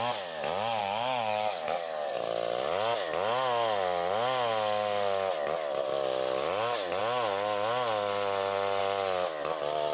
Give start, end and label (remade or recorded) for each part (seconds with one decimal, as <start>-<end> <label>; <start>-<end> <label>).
0.0-0.8 recorded; 0.8-2.1 remade; 2.1-9.9 recorded